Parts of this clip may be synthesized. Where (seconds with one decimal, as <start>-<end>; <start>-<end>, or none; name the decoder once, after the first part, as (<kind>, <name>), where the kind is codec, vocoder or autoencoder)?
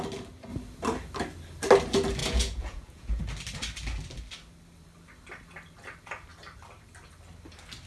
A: 2.2-3.2 (vocoder, Vocos)